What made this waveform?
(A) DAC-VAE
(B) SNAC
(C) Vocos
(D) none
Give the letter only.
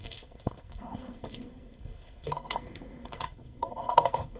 B